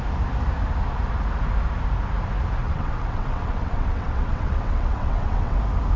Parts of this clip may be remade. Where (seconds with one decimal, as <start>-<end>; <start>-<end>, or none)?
2.6-5.6

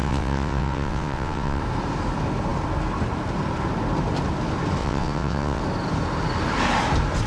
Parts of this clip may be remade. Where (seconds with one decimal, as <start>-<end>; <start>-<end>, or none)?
0.0-1.6; 4.8-5.6

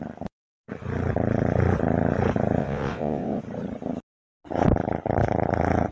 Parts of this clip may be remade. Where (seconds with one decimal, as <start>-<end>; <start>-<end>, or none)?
2.6-3.4

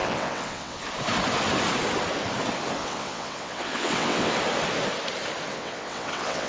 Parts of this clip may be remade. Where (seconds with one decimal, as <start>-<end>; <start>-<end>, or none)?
0.0-0.8; 2.8-4.3; 5.5-6.5